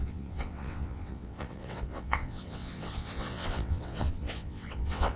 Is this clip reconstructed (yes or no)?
yes